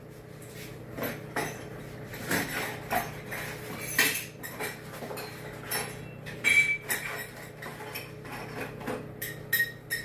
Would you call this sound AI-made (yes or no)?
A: no